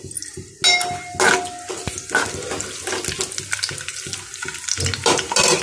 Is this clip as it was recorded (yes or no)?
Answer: yes